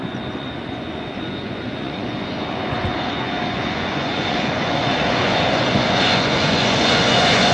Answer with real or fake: fake